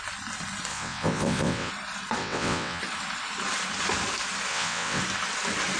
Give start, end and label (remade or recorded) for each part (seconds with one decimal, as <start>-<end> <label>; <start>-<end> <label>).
0.0-0.7 recorded; 0.7-1.7 remade; 1.7-2.2 recorded; 2.2-2.8 remade; 2.8-4.5 recorded; 4.5-5.0 remade; 5.0-5.8 recorded